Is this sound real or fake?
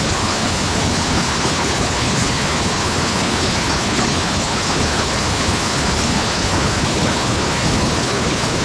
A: fake